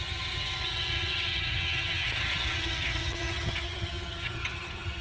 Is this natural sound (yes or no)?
no